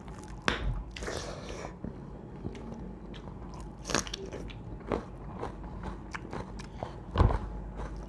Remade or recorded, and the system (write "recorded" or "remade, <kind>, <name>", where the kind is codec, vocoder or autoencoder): recorded